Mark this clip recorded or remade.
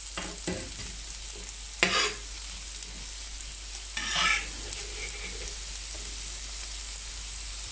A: recorded